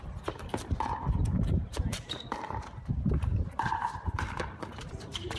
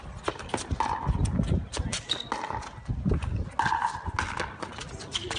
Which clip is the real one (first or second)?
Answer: second